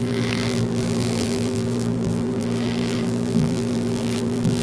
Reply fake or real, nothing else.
fake